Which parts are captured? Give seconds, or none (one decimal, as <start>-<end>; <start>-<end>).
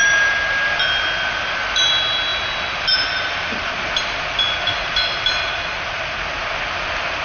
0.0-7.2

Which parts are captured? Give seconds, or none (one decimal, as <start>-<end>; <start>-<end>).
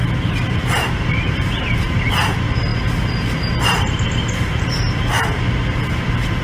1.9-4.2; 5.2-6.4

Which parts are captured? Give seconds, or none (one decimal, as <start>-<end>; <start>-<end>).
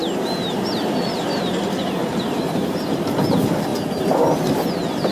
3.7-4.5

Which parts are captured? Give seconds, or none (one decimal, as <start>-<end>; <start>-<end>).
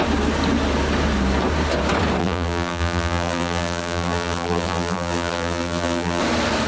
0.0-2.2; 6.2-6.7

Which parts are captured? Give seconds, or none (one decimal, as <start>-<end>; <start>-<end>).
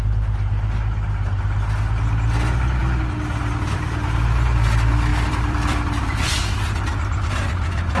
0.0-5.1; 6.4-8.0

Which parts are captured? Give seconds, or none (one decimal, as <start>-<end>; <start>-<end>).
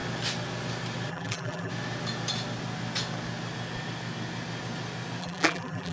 0.0-1.1; 1.7-5.2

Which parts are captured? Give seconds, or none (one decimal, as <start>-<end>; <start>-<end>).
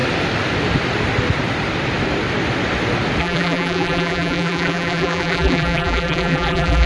0.0-3.2